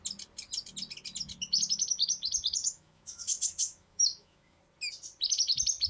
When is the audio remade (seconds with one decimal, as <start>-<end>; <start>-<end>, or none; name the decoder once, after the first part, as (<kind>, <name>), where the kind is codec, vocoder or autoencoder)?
2.6-4.6 (autoencoder, DAC-VAE)